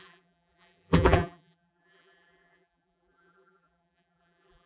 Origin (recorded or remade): remade